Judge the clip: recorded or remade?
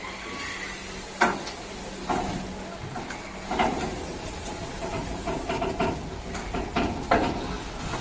recorded